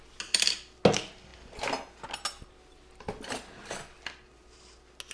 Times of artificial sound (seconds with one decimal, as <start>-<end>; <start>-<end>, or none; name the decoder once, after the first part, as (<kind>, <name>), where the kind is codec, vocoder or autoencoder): none